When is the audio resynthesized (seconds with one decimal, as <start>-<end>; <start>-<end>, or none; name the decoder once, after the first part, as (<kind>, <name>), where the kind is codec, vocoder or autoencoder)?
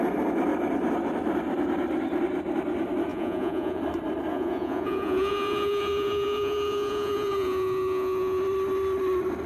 3.1-3.8 (vocoder, Vocos); 4.3-8.4